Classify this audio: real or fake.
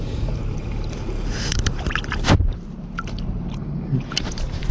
fake